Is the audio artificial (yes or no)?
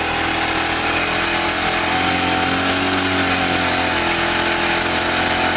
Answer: no